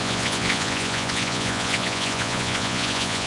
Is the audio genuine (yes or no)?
no